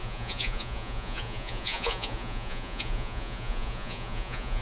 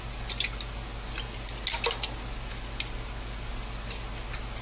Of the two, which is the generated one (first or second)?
first